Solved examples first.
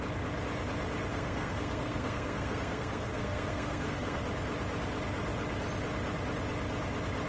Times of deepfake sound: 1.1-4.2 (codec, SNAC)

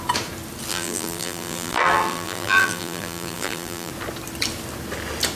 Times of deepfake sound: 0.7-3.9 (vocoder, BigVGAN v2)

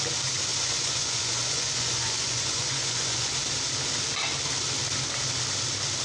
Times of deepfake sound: 0.5-3.3 (vocoder, Vocos)

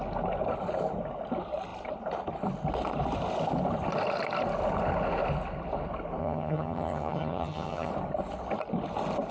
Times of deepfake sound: 6.2-7.9 (vocoder, HiFi-GAN)

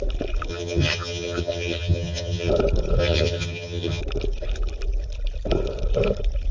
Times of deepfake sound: 0.5-2.5 (vocoder, HiFi-GAN); 3.0-4.0

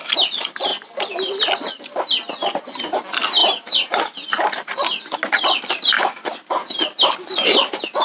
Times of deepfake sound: none

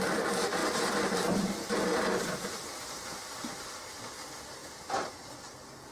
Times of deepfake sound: 4.6-5.1 (vocoder, BigVGAN v2)

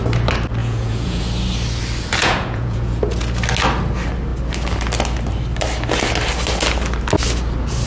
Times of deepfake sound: 0.6-1.2 (vocoder, Vocos); 2.2-3.0